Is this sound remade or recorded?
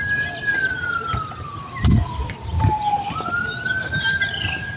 recorded